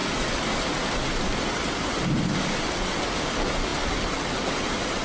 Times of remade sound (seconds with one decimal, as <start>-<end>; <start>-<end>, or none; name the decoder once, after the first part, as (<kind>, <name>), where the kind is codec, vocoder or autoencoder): none